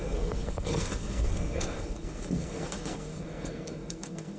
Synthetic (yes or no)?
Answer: yes